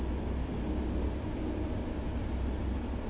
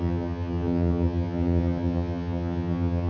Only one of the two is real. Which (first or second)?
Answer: first